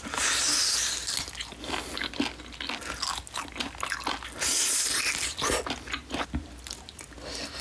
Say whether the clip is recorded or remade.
recorded